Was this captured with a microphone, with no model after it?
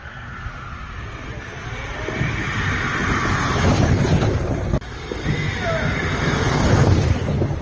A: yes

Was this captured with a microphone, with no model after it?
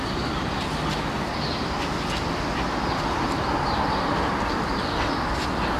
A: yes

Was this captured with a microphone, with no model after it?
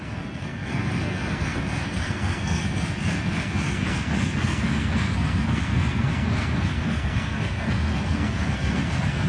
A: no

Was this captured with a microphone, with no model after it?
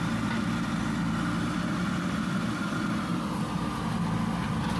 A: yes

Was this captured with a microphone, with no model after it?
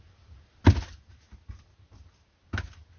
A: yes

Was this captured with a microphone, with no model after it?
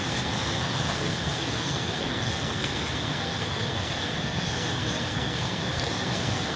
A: no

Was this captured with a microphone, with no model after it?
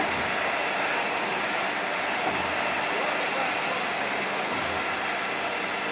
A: yes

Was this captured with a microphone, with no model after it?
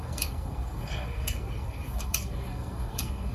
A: no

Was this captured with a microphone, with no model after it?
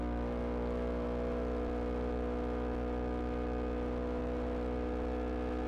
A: yes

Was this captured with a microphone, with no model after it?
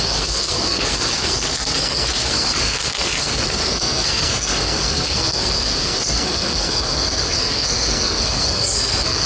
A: no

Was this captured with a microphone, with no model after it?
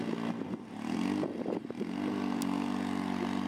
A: yes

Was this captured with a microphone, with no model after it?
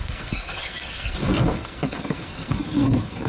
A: no